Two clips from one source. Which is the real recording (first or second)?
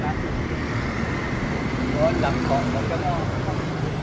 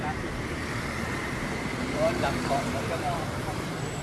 first